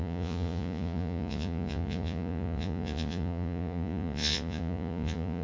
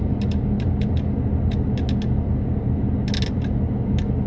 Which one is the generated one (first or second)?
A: first